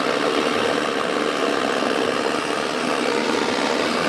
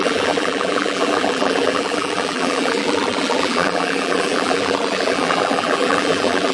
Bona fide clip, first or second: first